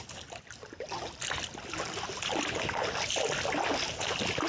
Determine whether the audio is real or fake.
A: real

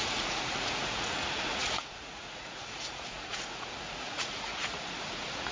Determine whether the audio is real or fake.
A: fake